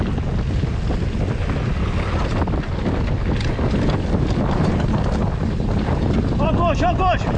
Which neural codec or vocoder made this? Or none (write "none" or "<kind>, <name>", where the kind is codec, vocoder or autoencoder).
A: none